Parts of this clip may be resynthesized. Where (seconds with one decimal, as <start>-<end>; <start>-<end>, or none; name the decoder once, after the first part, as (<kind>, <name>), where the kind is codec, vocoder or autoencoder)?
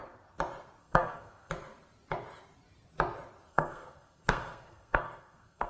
0.8-1.5 (codec, SNAC); 3.5-5.7